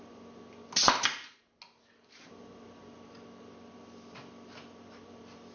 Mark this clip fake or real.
real